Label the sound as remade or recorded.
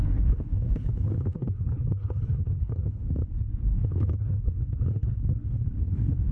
remade